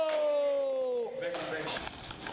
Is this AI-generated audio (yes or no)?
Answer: no